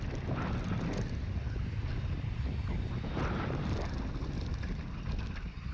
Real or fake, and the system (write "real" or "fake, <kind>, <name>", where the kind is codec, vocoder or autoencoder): real